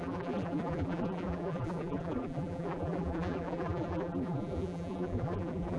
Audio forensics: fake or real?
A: fake